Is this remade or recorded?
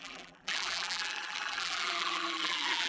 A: remade